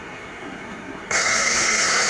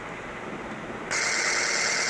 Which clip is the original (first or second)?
second